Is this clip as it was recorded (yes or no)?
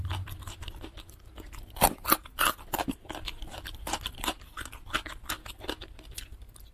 yes